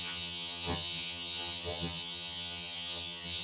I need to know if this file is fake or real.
fake